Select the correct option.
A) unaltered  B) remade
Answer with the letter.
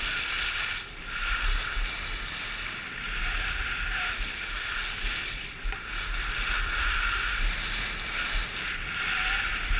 A